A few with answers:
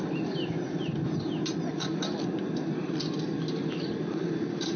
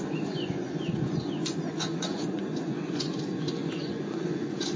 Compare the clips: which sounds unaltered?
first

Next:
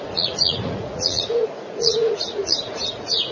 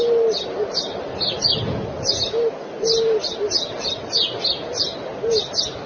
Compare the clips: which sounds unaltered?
second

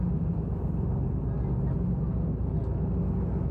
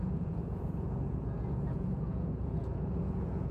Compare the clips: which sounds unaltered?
first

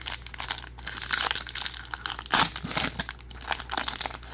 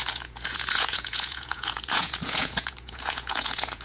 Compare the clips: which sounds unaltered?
first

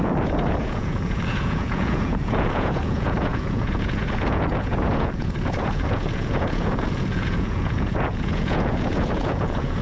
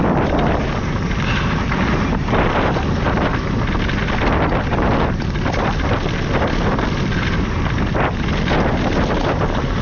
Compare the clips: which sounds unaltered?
second